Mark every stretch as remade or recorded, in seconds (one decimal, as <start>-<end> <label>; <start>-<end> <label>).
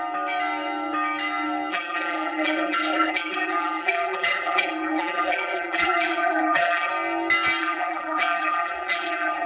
0.0-1.7 recorded; 1.7-6.9 remade; 6.9-7.6 recorded; 7.6-9.5 remade